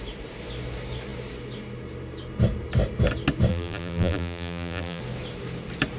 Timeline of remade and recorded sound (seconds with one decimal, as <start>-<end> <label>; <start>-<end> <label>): 0.0-3.5 recorded; 3.5-5.0 remade; 5.0-6.0 recorded